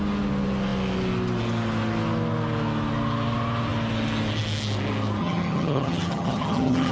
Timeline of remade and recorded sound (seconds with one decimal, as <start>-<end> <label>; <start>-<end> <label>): 0.0-5.2 recorded; 5.2-6.9 remade